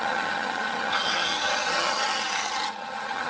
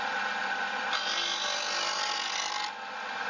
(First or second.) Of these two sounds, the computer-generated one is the first